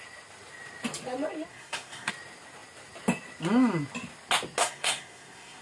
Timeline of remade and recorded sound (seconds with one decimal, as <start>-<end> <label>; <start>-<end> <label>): 0.0-1.5 recorded; 1.5-2.1 remade; 2.1-4.6 recorded; 4.6-5.6 remade